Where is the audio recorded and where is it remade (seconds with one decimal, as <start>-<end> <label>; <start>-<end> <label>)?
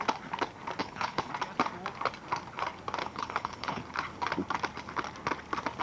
0.0-0.8 recorded; 0.8-1.3 remade; 1.3-3.0 recorded; 3.0-3.8 remade; 3.8-5.8 recorded